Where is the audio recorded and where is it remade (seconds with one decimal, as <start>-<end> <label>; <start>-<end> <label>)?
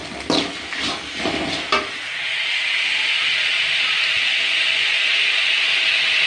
0.0-4.4 recorded; 4.4-5.1 remade; 5.1-6.3 recorded